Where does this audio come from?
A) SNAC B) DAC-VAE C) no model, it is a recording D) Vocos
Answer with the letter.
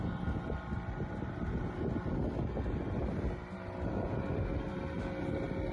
C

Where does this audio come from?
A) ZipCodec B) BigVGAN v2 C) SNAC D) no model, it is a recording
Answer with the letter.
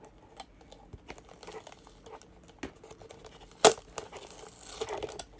D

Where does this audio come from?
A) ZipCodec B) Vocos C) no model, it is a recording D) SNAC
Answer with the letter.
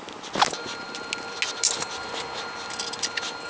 C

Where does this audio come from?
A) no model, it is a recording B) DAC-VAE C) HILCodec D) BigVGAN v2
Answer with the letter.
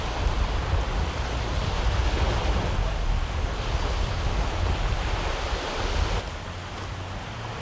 A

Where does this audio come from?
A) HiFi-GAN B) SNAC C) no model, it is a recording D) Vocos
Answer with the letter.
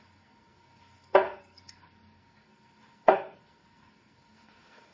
B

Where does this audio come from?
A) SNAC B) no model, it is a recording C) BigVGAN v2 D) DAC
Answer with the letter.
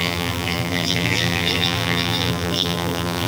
C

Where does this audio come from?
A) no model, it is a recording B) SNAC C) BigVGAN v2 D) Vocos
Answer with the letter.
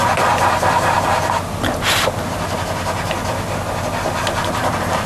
A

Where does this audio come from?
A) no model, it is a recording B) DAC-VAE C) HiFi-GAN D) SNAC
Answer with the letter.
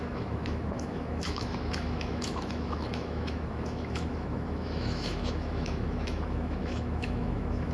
B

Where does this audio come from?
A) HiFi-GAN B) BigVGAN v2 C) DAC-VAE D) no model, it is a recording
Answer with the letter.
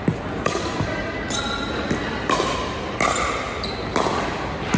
D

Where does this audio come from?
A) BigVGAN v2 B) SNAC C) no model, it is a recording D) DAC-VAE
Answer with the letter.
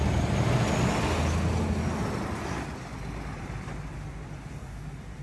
C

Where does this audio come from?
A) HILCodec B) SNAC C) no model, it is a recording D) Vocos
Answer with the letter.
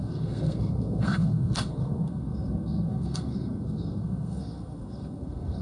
B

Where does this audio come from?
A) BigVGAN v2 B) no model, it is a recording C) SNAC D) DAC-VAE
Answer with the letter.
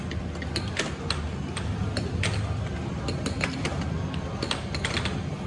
B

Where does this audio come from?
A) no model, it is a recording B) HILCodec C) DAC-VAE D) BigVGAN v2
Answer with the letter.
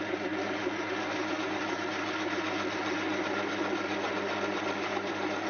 A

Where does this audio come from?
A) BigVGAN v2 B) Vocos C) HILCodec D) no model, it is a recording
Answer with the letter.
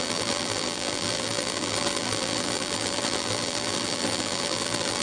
A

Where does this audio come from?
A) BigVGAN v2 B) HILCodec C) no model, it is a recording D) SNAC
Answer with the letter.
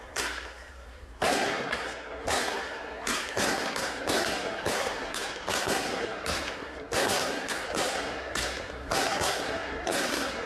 D